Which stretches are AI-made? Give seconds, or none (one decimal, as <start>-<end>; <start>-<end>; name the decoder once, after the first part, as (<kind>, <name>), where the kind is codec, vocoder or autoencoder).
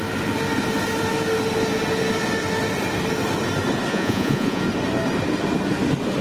3.9-4.6 (vocoder, Vocos)